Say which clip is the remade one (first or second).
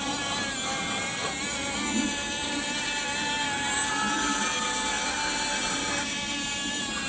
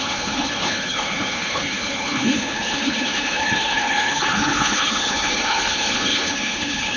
second